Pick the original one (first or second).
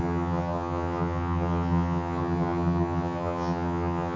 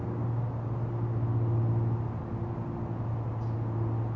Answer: second